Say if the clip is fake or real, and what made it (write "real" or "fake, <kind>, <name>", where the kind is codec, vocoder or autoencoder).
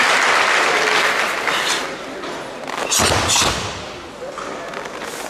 real